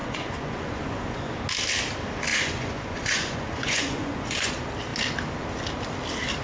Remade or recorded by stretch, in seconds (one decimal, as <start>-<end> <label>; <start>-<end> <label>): 0.0-1.4 remade; 1.4-2.3 recorded; 2.3-4.5 remade; 4.5-6.4 recorded